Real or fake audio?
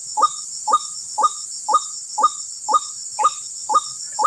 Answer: real